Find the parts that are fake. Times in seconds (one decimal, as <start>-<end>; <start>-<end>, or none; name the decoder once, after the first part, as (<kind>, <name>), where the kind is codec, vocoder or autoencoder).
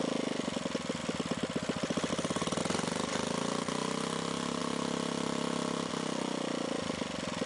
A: none